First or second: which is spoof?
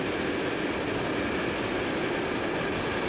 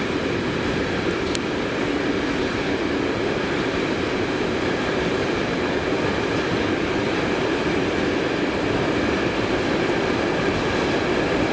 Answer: second